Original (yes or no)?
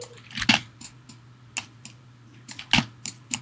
yes